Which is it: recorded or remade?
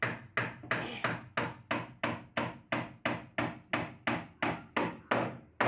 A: recorded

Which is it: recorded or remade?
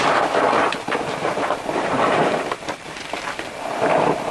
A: remade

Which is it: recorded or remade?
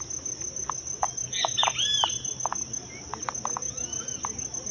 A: recorded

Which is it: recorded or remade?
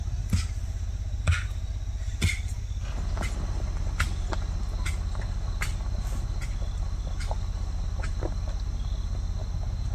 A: recorded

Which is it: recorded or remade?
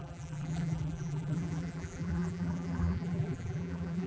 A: remade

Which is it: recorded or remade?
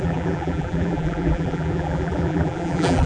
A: remade